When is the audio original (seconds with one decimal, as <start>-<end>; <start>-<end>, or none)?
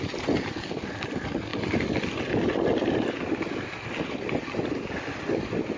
0.0-5.8